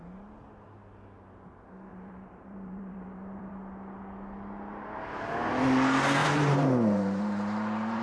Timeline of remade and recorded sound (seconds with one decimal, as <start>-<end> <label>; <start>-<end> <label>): 0.0-1.9 recorded; 1.9-3.5 remade; 3.5-6.2 recorded; 6.2-8.0 remade